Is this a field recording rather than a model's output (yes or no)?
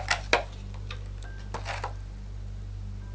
yes